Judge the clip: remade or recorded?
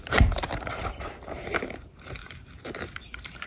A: remade